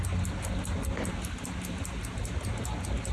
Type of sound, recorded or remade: recorded